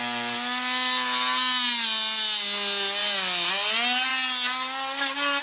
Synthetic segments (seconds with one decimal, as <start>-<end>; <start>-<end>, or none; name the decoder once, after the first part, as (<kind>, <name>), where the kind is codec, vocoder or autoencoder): none